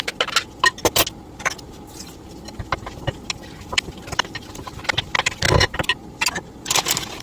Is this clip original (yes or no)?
yes